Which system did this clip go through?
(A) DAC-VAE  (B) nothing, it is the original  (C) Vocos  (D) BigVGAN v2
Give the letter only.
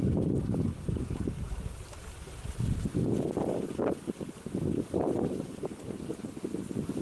B